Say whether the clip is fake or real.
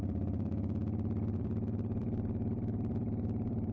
fake